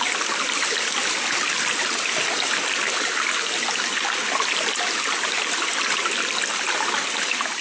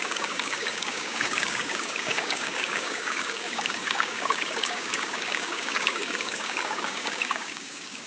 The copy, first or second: second